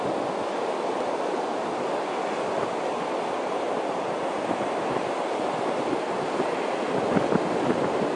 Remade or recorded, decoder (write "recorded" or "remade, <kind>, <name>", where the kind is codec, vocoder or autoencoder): recorded